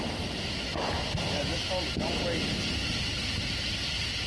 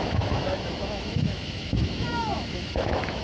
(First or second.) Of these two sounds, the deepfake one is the second